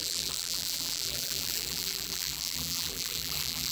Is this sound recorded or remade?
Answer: remade